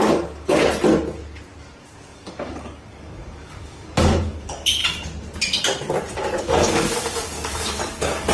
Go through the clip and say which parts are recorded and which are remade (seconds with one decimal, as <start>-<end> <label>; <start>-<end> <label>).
0.0-0.6 remade; 0.6-1.8 recorded; 1.8-4.8 remade; 4.8-6.4 recorded; 6.4-8.3 remade